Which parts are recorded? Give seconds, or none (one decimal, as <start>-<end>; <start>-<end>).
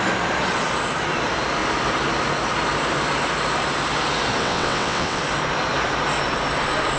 0.0-4.4; 5.2-7.0